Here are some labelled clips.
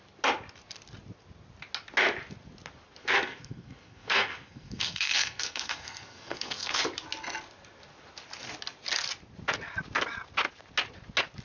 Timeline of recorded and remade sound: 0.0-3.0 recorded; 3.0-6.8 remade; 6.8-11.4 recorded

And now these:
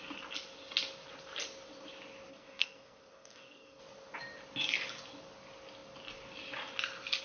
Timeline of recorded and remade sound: 0.0-2.3 recorded; 2.3-3.8 remade; 3.8-7.2 recorded

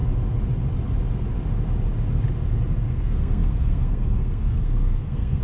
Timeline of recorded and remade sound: 0.0-2.8 recorded; 2.8-5.4 remade

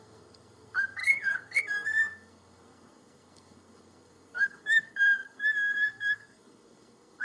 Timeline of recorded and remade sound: 0.0-7.2 remade

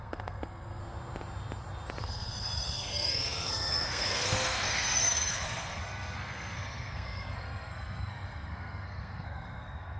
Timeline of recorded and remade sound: 0.0-0.8 remade; 0.8-2.0 recorded; 2.0-10.0 remade

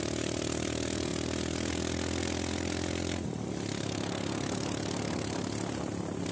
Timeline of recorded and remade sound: 0.0-6.3 recorded

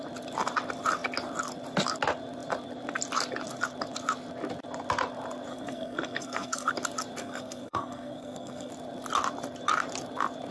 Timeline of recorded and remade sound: 0.0-5.5 recorded; 5.5-6.7 remade; 6.7-7.2 recorded; 7.2-8.7 remade; 8.7-10.5 recorded